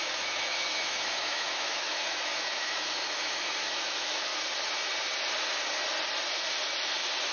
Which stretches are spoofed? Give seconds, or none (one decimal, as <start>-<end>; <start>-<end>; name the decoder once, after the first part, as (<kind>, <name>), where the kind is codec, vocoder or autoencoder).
0.0-4.3 (autoencoder, DAC-VAE)

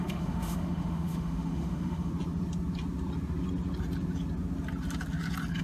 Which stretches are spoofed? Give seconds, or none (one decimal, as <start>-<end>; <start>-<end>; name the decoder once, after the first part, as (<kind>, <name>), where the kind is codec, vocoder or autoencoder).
0.0-2.1 (autoencoder, DAC-VAE)

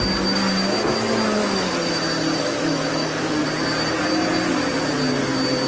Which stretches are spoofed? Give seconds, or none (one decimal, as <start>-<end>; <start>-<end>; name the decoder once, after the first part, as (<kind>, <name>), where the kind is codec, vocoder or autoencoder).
1.4-2.0 (autoencoder, DAC-VAE); 2.4-3.3

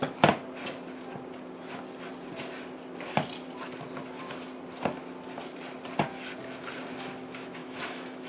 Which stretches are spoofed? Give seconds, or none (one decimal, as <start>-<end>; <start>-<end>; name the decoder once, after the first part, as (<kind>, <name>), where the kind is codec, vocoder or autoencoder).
7.6-8.3 (autoencoder, DAC-VAE)

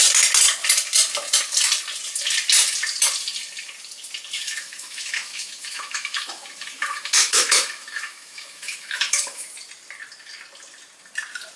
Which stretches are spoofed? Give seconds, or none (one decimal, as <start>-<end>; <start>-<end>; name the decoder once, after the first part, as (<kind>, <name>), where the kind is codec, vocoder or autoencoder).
4.3-9.5 (autoencoder, DAC-VAE)

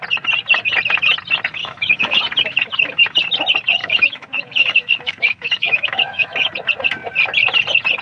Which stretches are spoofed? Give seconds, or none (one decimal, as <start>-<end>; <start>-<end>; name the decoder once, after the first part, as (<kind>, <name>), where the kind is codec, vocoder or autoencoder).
1.6-2.2 (autoencoder, DAC-VAE); 3.8-6.5

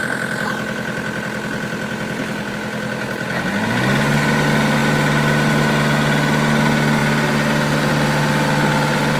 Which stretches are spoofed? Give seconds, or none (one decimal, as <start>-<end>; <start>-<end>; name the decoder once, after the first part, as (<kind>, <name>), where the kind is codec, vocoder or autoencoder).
none